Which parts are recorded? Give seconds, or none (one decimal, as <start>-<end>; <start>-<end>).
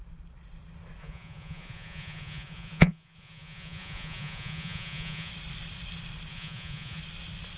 0.0-1.0; 5.3-6.3; 7.0-7.6